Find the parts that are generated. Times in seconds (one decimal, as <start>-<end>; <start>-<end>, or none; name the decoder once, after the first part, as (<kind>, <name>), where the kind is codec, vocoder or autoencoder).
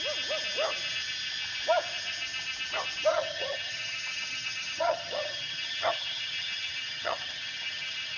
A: 3.1-8.2 (vocoder, HiFi-GAN)